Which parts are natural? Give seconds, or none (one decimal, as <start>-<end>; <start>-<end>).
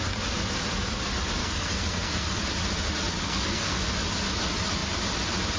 0.0-1.4; 2.4-3.2; 3.8-5.6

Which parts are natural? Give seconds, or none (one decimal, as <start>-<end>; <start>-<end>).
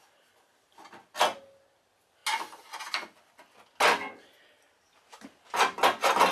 0.0-6.3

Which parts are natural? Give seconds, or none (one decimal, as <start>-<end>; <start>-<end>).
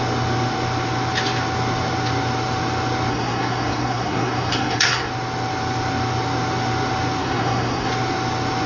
0.0-3.1; 5.1-7.2; 7.9-8.7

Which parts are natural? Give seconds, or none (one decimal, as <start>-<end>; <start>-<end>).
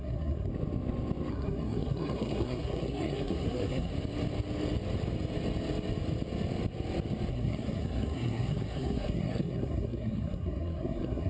0.5-1.3; 3.9-7.3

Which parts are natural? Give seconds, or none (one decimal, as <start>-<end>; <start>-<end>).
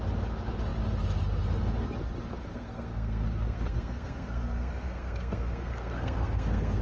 0.0-2.5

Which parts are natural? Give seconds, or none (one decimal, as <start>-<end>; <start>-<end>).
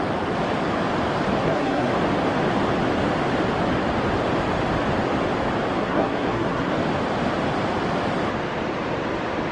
0.0-1.4; 1.9-5.8; 6.7-9.5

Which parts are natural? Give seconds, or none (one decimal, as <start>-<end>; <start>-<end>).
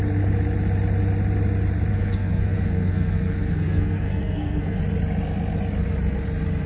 0.0-1.9; 4.8-6.7